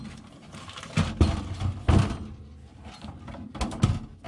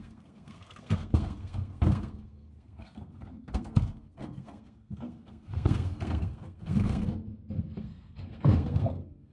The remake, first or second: second